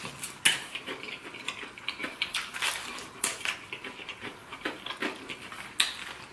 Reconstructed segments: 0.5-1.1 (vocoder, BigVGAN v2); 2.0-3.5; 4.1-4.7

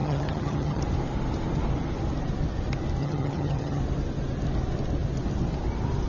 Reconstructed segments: 0.0-0.8 (vocoder, HiFi-GAN); 3.0-3.8

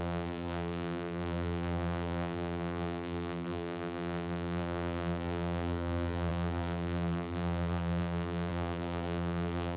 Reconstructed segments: 0.0-9.8 (vocoder, BigVGAN v2)

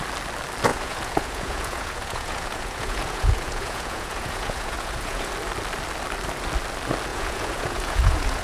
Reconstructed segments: 0.7-5.3 (vocoder, Vocos); 7.1-8.4

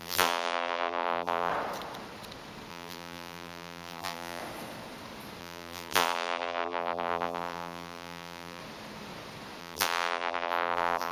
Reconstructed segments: 0.0-1.5 (vocoder, BigVGAN v2); 2.7-4.4; 5.4-8.6; 9.6-11.1

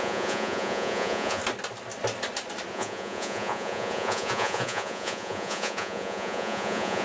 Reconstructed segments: 0.0-1.4 (vocoder, Vocos); 2.7-7.0

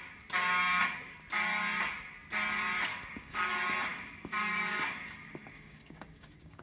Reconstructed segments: 0.4-1.2 (codec, DAC); 2.9-3.5; 3.9-6.6